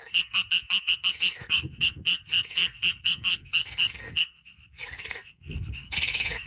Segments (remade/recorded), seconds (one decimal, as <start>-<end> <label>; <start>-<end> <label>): 0.0-6.5 remade